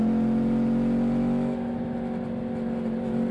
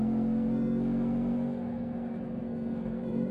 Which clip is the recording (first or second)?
first